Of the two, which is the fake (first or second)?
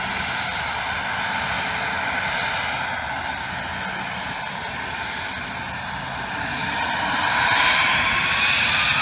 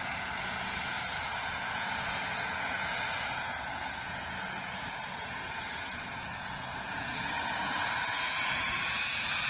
second